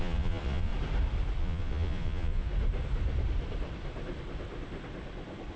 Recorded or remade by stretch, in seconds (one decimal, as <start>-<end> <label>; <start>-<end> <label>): 0.0-0.7 remade; 0.7-1.4 recorded; 1.4-2.5 remade; 2.5-5.6 recorded